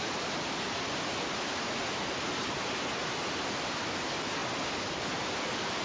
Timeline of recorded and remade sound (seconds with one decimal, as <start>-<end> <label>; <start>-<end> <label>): 0.0-5.8 recorded